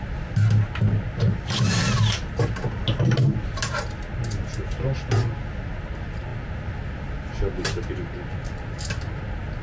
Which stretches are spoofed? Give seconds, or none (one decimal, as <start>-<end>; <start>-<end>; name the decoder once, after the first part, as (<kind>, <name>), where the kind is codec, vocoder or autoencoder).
none